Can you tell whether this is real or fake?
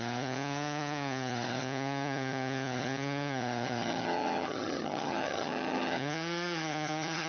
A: fake